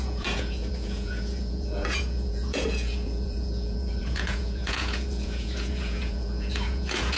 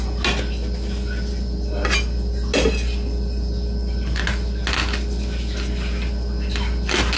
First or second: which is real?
second